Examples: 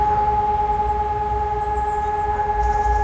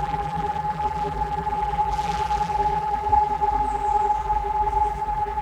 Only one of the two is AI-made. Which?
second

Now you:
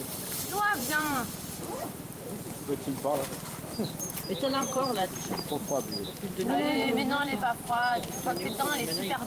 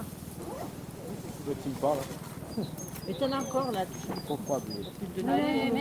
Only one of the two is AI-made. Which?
first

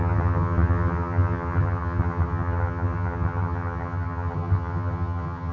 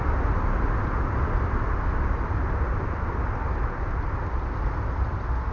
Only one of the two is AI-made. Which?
first